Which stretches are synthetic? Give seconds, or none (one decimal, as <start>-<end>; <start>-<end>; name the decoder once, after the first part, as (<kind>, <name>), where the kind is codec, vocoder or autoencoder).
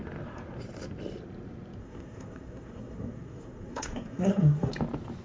1.8-4.7 (codec, SNAC)